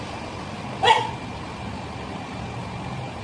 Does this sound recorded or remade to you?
recorded